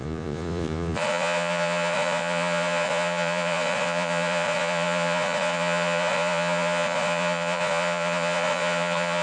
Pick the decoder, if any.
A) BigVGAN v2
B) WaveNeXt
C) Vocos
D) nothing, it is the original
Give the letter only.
C